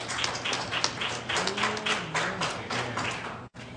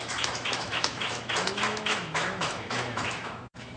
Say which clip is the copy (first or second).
second